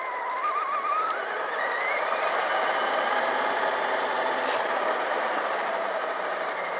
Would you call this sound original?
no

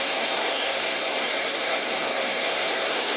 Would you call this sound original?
no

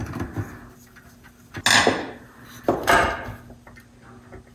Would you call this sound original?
yes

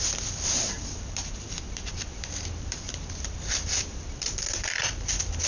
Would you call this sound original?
no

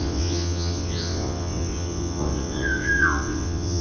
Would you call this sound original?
no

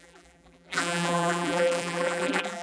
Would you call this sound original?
no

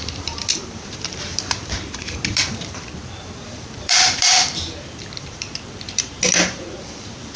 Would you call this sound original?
no